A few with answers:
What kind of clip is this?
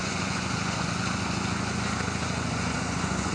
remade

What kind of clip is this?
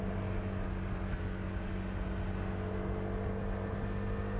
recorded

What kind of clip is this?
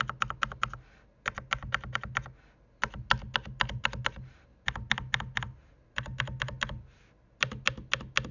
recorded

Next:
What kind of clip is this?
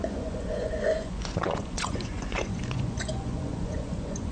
remade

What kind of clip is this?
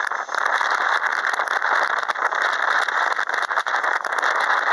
recorded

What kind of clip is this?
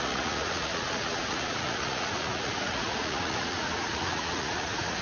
remade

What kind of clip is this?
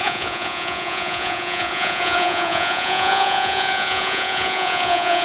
remade